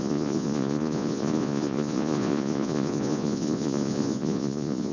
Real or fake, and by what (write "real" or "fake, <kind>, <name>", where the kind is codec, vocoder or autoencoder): fake, vocoder, Vocos